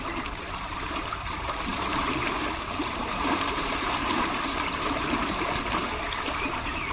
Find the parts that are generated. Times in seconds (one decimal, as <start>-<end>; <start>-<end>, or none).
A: 0.0-6.9